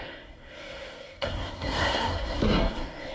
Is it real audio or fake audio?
fake